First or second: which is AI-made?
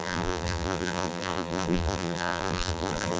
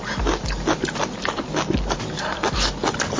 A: first